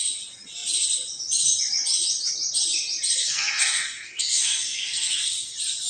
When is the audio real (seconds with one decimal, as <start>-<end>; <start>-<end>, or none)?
0.0-3.2; 5.5-5.9